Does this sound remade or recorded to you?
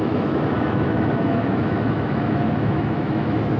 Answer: remade